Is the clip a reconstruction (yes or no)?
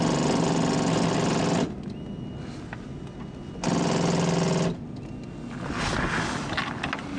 no